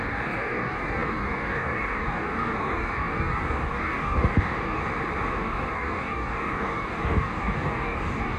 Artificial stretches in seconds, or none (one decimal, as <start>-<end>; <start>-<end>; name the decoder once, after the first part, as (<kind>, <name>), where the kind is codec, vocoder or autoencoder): 0.0-4.8 (codec, DAC); 5.3-8.4